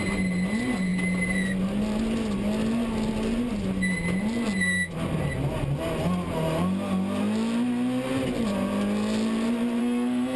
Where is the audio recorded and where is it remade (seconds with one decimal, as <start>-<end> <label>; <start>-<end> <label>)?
0.0-9.8 recorded; 9.8-10.4 remade

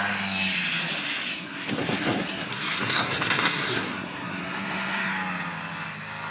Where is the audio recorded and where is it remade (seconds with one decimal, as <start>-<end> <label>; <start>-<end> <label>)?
0.0-1.3 recorded; 1.3-5.1 remade; 5.1-6.3 recorded